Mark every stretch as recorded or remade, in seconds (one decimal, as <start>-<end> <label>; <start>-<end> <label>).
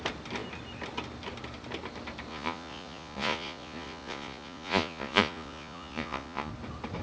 0.0-2.3 recorded; 2.3-6.5 remade; 6.5-7.0 recorded